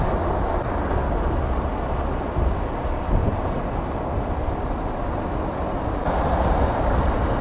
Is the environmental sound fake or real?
real